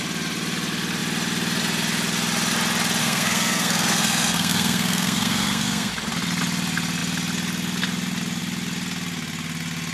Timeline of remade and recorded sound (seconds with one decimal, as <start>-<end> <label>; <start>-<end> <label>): 0.0-3.0 recorded; 3.0-5.9 remade; 5.9-9.9 recorded